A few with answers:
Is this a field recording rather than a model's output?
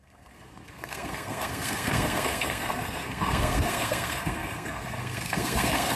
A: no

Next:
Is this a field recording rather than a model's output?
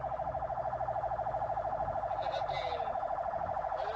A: yes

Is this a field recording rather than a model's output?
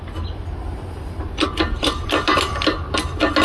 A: yes